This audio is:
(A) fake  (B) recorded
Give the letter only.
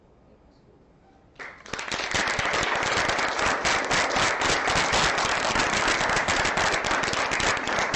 B